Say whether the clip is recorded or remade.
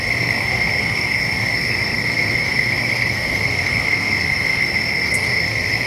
remade